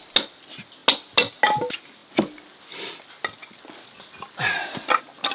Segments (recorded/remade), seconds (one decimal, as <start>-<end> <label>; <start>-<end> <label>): 0.0-5.3 recorded